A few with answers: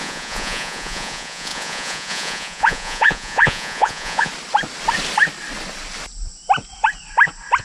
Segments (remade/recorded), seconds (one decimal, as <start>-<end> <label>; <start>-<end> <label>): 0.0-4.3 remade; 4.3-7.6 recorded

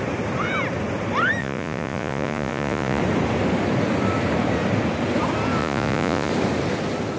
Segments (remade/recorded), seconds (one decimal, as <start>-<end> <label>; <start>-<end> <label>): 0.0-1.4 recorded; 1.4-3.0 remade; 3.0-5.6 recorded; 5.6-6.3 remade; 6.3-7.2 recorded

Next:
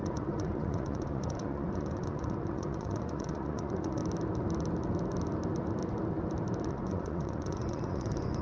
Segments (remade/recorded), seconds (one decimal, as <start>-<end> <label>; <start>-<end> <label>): 0.0-4.0 remade; 4.0-6.7 recorded; 6.7-8.4 remade